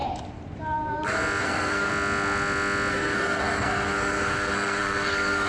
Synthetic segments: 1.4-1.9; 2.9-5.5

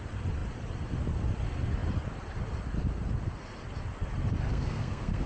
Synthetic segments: 4.5-5.3

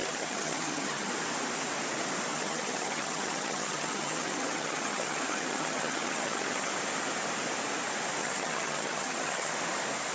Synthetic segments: 0.0-1.1; 2.3-6.7; 8.2-9.5

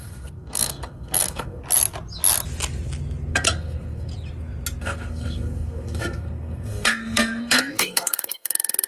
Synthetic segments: 0.0-1.6; 3.3-4.1; 4.8-8.9